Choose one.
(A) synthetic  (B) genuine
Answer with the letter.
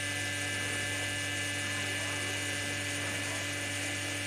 B